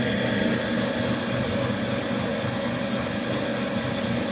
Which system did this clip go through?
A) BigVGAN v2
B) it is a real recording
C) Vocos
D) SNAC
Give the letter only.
B